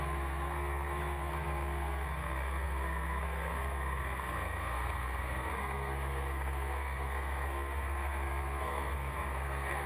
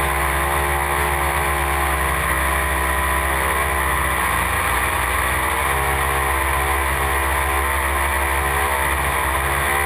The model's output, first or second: first